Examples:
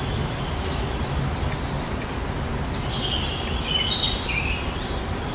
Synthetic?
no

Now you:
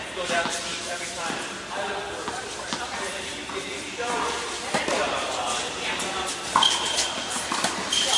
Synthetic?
yes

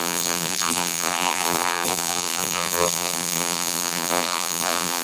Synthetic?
yes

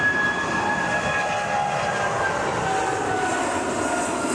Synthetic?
no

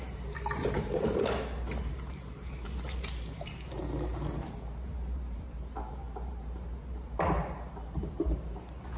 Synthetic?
yes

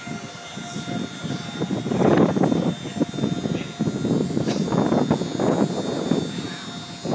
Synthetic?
no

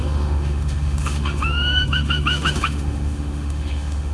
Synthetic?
yes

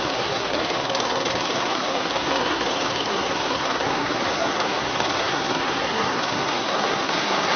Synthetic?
yes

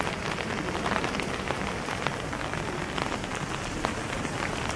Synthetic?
no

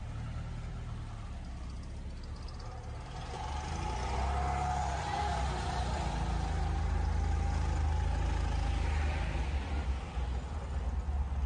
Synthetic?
no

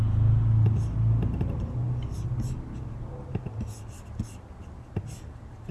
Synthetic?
no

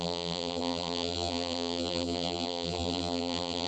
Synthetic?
yes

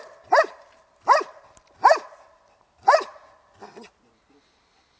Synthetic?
no